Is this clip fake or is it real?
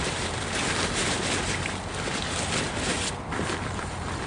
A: real